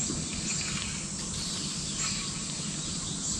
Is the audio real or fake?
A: real